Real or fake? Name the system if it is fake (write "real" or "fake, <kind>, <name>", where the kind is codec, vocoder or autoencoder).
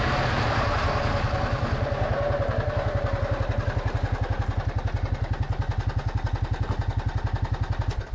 real